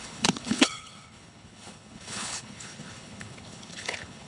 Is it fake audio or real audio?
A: fake